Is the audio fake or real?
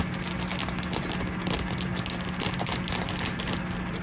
real